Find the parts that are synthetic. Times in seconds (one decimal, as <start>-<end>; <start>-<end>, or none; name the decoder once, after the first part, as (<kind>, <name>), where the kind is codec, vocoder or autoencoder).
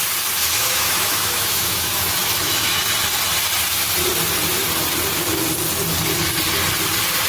0.4-2.8 (autoencoder, DAC-VAE)